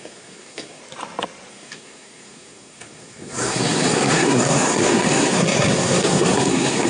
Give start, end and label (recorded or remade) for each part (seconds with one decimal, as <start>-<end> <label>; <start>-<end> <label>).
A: 0.0-0.8 remade; 0.8-1.5 recorded; 1.5-6.9 remade